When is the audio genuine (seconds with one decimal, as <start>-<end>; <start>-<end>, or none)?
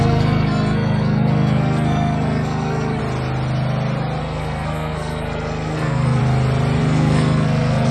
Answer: 3.0-4.2; 6.2-6.8